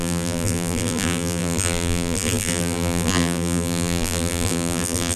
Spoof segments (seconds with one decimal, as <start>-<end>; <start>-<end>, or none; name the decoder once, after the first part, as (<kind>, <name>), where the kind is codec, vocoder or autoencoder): 0.0-5.2 (vocoder, BigVGAN v2)